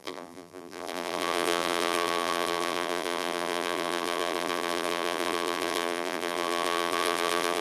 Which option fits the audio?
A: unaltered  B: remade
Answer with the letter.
B